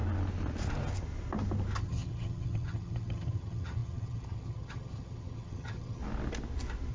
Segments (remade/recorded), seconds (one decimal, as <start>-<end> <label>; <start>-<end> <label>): 0.0-1.8 recorded; 1.8-6.0 remade; 6.0-6.9 recorded